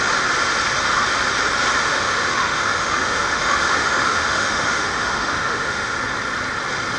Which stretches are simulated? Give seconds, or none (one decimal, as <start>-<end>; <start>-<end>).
1.8-6.0